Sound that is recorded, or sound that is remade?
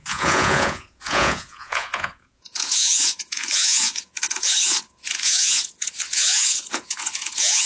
remade